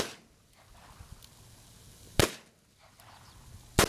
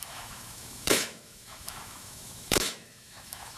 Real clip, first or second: first